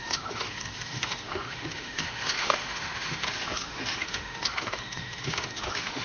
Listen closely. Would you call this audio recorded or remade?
remade